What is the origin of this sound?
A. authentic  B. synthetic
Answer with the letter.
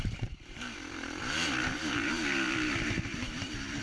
B